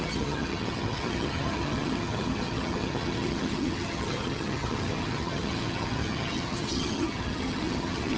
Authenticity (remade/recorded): remade